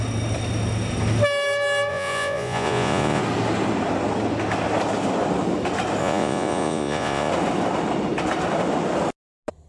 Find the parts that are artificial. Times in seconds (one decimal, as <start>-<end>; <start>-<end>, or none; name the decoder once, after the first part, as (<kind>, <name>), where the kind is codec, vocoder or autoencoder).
1.9-3.2 (vocoder, Vocos); 6.0-7.3